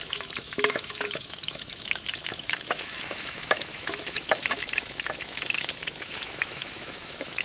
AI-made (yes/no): yes